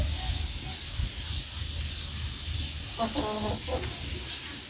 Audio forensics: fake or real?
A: real